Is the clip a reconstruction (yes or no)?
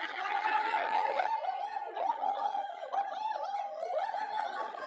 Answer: yes